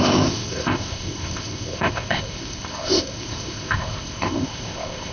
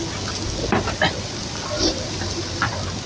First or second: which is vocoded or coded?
first